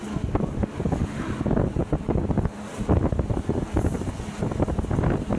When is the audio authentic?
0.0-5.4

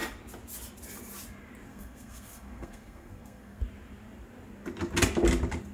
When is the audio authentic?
0.0-1.7; 3.6-5.7

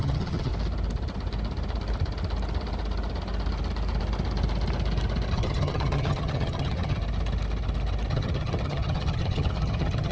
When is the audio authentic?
0.5-5.3; 7.0-8.1